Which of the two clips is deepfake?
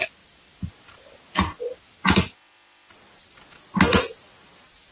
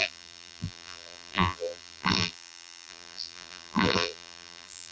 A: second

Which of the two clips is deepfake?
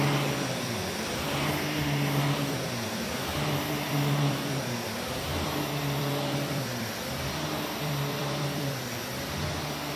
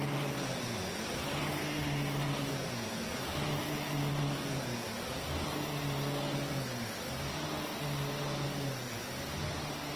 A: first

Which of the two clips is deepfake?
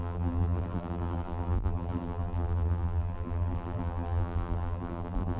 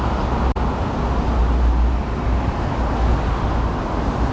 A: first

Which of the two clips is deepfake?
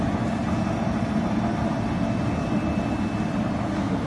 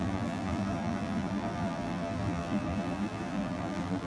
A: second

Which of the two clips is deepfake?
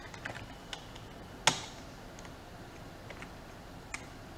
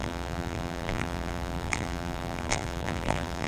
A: second